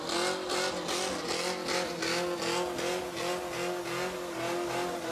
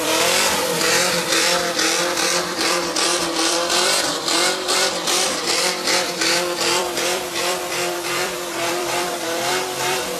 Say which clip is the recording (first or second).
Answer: first